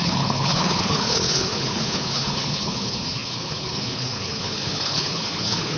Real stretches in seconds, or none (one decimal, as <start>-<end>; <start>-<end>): none